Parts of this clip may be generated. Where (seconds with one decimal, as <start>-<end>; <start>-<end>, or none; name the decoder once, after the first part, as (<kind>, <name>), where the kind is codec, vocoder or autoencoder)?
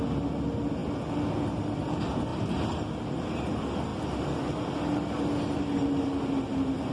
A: none